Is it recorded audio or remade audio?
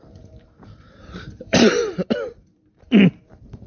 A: remade